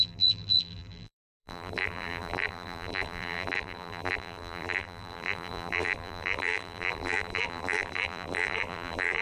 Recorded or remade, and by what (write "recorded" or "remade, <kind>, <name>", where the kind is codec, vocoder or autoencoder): remade, vocoder, BigVGAN v2